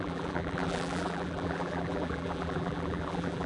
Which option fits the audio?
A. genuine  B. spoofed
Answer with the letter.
B